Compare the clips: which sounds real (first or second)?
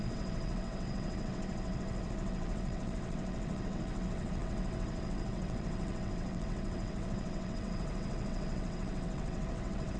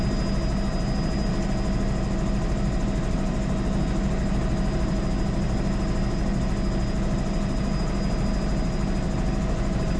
second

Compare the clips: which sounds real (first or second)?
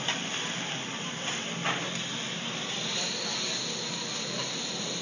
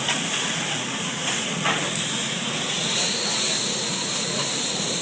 first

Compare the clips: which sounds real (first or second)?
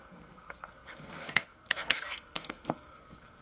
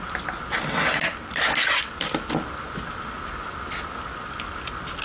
second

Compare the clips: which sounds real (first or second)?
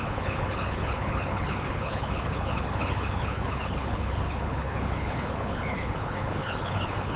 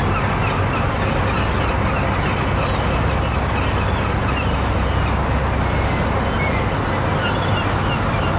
second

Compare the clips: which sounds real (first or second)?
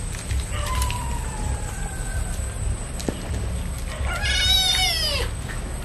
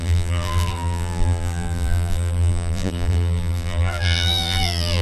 first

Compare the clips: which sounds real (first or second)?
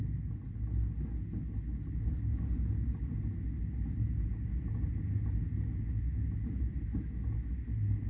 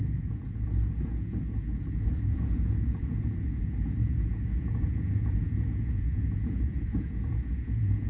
first